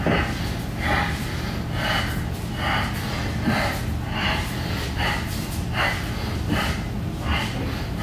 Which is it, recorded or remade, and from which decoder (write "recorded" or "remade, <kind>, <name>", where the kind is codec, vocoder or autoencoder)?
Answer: recorded